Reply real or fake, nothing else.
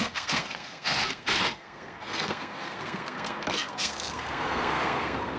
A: fake